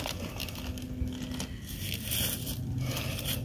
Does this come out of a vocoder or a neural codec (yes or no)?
no